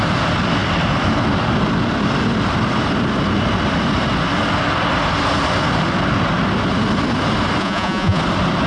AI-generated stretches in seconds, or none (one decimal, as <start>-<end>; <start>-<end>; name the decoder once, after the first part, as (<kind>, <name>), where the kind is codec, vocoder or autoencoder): 7.6-8.2 (vocoder, Vocos)